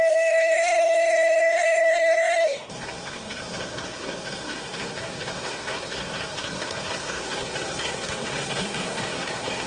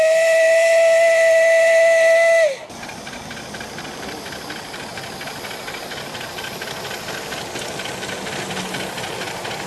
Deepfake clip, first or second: first